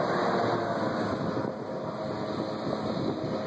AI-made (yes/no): no